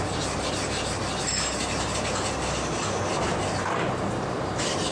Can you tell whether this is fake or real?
real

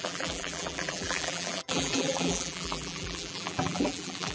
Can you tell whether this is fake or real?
fake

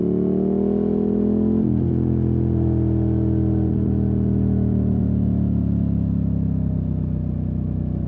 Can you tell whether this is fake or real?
real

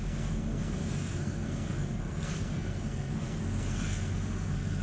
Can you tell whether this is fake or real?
fake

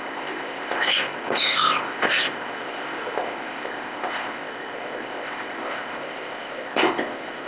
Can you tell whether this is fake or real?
fake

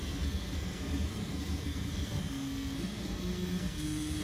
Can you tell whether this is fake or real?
fake